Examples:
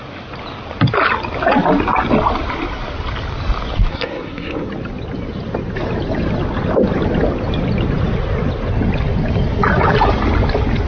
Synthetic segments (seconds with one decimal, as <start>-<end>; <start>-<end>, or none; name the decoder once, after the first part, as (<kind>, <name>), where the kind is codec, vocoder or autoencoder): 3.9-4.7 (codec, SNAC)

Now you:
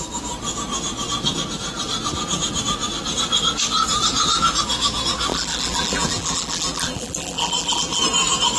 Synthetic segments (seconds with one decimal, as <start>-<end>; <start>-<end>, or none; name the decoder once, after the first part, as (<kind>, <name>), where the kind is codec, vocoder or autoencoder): 5.3-8.0 (vocoder, BigVGAN v2)

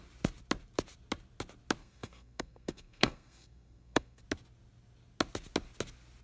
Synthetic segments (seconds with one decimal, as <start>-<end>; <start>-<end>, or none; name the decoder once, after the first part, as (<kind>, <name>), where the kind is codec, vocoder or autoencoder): 1.8-4.2 (codec, SNAC)

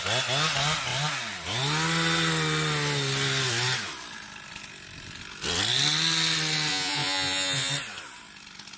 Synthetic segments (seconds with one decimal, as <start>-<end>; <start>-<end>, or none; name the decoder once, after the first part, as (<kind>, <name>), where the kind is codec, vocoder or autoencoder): 6.7-7.7 (vocoder, Vocos)